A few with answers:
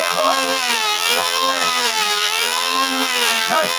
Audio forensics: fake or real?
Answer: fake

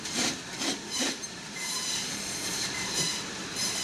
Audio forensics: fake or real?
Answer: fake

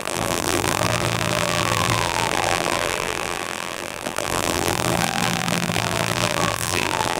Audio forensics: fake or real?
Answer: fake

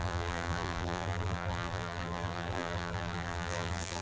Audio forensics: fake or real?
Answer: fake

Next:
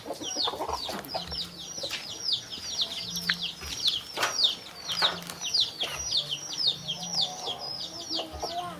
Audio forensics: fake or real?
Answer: real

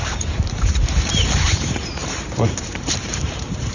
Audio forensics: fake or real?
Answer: fake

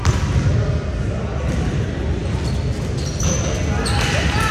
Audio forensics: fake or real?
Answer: real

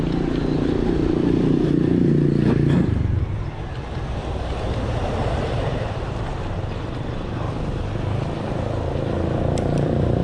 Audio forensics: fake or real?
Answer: fake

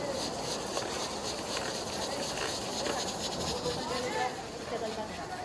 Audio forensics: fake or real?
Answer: real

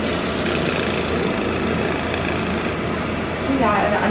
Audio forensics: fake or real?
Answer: real